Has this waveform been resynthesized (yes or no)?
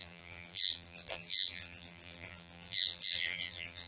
yes